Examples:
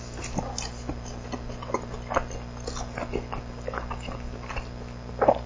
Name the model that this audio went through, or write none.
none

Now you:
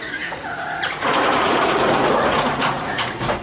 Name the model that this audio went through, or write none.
vocoder, Vocos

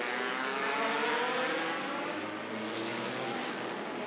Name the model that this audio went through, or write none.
none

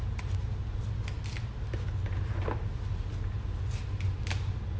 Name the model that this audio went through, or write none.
none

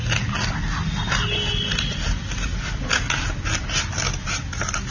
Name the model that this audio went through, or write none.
none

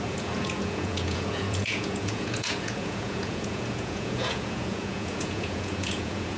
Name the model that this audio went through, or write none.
vocoder, Vocos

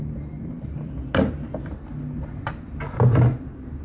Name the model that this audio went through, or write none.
none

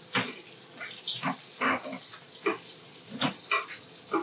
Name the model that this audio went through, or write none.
none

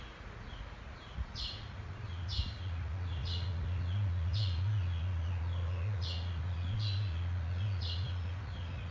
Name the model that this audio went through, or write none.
vocoder, Vocos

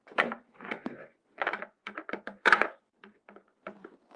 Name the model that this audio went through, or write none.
vocoder, Vocos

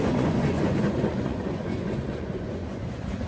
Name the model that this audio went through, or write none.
vocoder, Vocos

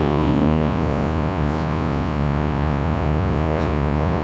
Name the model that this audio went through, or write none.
vocoder, Vocos